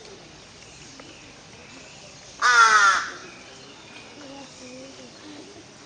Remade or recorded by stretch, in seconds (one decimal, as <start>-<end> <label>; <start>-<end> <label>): 0.0-5.9 recorded